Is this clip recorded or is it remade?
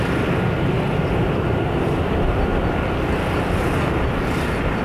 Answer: recorded